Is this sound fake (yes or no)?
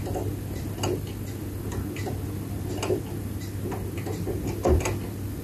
no